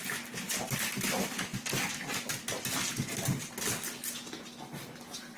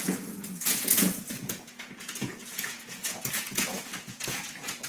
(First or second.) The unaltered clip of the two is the first